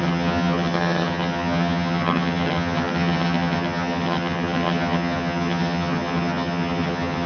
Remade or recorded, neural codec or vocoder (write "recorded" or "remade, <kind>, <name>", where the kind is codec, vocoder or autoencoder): remade, vocoder, HiFi-GAN